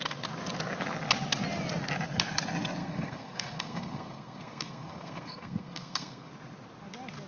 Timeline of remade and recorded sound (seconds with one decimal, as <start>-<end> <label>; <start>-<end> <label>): 0.0-2.8 recorded; 2.8-6.3 remade; 6.3-7.3 recorded